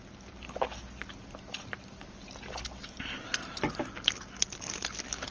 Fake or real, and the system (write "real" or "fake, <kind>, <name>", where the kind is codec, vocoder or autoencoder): real